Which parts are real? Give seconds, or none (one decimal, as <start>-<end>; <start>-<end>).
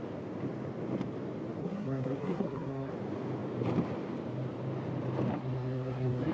0.0-1.6; 2.9-5.3